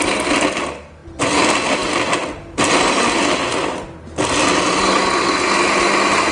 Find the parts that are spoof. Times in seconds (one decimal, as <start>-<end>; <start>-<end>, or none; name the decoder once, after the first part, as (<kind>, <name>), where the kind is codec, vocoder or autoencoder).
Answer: none